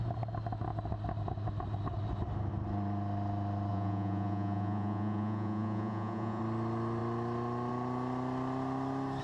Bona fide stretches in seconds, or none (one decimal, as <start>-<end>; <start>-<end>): 0.0-3.7; 6.4-9.2